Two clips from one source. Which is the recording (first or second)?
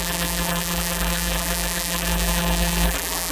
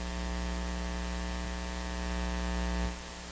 second